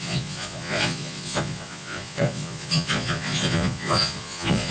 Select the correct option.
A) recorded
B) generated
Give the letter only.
B